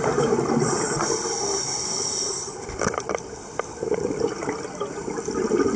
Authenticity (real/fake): real